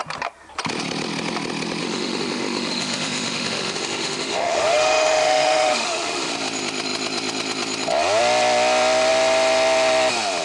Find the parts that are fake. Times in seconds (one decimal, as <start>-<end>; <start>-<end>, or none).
1.8-6.3